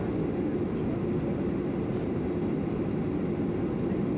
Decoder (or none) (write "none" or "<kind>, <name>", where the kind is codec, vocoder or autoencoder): none